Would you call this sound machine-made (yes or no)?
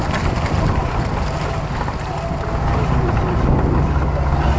no